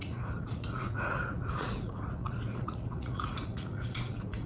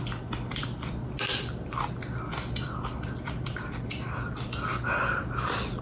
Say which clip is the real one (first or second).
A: second